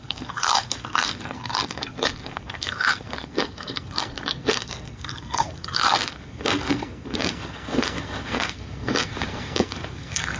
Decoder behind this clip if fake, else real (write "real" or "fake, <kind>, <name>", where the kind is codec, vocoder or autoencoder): fake, codec, SNAC